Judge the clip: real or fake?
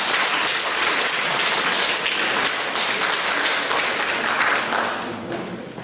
real